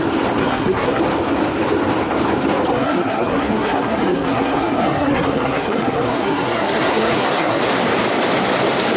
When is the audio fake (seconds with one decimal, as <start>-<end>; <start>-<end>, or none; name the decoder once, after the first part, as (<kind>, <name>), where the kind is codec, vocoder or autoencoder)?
0.4-1.0 (codec, SNAC); 2.7-7.6